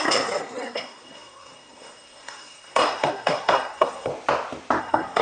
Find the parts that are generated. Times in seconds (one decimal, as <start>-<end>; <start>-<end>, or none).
0.0-4.1; 4.8-5.2